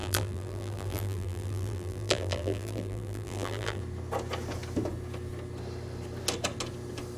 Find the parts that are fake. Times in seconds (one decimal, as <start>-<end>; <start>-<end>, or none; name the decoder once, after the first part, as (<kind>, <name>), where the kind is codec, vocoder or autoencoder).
0.0-3.8 (vocoder, BigVGAN v2)

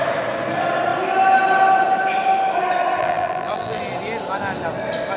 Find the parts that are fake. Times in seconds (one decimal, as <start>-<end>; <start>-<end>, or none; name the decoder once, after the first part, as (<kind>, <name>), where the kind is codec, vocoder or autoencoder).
3.0-3.8 (vocoder, BigVGAN v2)

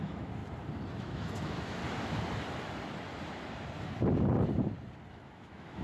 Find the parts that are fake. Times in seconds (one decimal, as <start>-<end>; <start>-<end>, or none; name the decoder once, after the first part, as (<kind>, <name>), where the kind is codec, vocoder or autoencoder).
0.0-0.4 (autoencoder, DAC-VAE); 1.0-1.8; 5.1-5.8

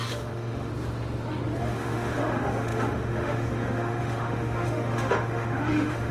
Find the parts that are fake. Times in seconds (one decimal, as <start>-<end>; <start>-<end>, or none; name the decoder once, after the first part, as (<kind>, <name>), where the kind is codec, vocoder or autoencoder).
0.0-0.7 (autoencoder, DAC-VAE); 1.6-6.1

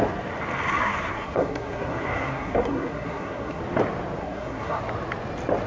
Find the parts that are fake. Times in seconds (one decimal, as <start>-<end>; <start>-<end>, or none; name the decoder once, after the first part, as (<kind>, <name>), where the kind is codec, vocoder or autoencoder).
0.8-3.6 (codec, SNAC); 4.2-4.8